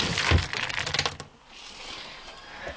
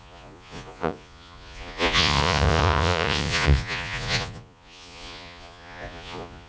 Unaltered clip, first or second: first